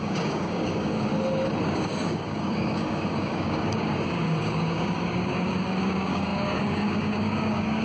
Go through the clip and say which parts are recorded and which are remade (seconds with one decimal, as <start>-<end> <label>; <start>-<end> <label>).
0.0-1.1 remade; 1.1-1.6 recorded; 1.6-7.8 remade